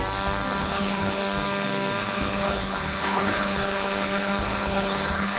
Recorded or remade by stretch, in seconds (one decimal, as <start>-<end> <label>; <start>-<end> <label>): 0.0-0.6 recorded; 0.6-1.2 remade; 1.2-2.0 recorded; 2.0-5.4 remade